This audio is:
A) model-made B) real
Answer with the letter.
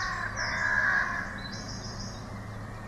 B